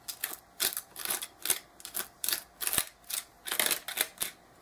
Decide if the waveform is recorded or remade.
recorded